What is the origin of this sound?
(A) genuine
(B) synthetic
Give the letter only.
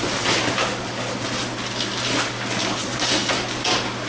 A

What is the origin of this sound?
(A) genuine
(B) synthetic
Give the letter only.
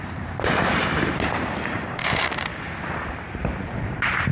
B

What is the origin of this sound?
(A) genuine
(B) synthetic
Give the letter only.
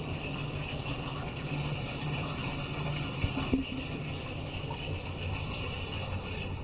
B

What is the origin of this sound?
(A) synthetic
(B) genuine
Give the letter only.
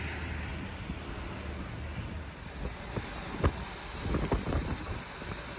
B